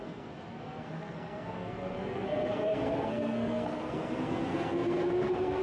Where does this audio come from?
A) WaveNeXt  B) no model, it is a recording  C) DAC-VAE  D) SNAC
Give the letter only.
D